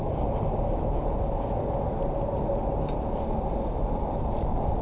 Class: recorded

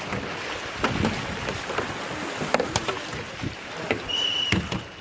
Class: recorded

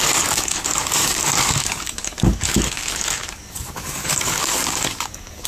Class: remade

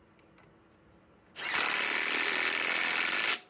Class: recorded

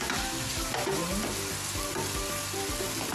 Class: recorded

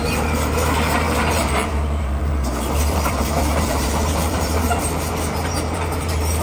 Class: remade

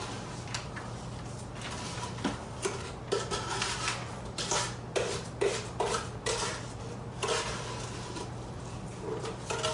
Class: recorded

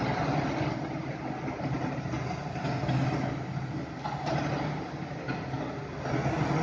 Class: recorded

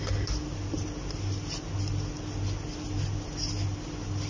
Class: recorded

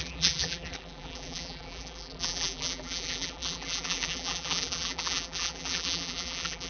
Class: remade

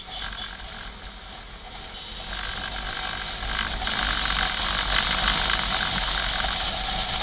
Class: recorded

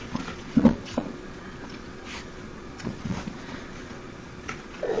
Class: remade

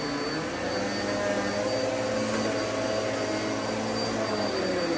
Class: recorded